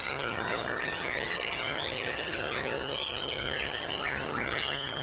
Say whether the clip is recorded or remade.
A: remade